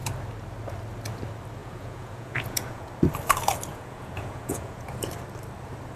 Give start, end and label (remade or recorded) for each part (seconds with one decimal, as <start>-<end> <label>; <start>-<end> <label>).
0.0-1.6 recorded; 1.6-2.9 remade; 2.9-3.7 recorded; 3.7-4.9 remade; 4.9-6.0 recorded